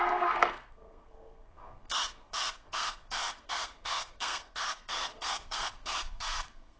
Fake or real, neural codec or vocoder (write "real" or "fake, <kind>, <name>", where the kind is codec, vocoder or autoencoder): fake, codec, SNAC